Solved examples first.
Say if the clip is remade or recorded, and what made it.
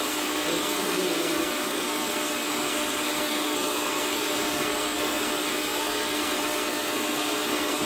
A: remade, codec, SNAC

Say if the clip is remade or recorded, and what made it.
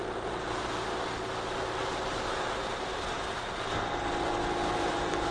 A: recorded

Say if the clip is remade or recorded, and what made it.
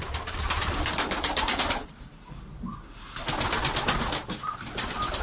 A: recorded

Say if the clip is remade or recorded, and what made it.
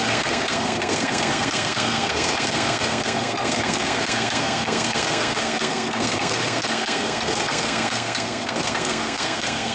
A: remade, codec, SNAC